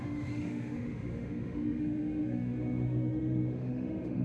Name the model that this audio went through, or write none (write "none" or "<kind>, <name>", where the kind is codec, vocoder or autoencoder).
autoencoder, DAC-VAE